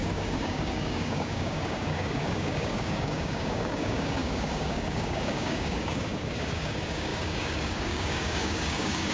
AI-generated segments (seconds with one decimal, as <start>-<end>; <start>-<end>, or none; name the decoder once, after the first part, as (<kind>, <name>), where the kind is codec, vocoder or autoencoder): 0.0-9.1 (codec, DAC)